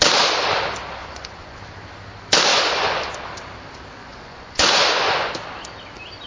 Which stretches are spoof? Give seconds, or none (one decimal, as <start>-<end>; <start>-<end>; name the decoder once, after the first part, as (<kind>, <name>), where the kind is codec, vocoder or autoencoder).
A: 1.0-1.6 (vocoder, Vocos); 2.5-3.1; 4.0-5.3